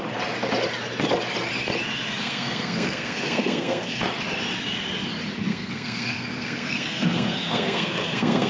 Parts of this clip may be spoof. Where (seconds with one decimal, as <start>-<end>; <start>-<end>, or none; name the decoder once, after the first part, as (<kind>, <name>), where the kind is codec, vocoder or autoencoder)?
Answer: 2.2-4.0 (codec, SNAC); 5.5-8.5